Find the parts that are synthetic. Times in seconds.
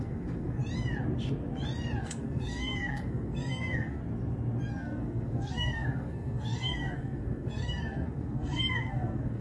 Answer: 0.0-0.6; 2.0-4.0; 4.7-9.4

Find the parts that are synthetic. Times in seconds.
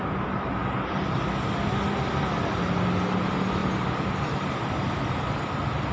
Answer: none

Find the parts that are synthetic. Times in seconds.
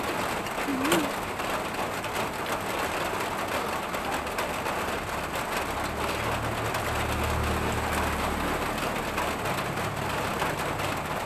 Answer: none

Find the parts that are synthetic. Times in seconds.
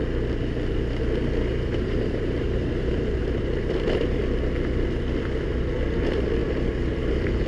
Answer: 1.5-4.2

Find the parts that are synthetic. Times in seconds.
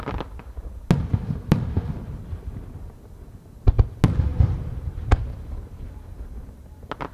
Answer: none